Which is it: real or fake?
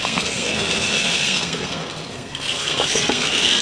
fake